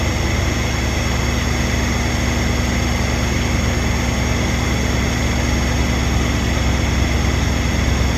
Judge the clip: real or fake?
real